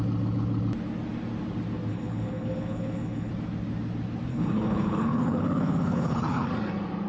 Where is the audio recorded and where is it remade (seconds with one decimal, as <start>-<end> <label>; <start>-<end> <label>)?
0.0-1.9 recorded; 1.9-3.3 remade; 3.3-4.3 recorded; 4.3-6.5 remade; 6.5-7.1 recorded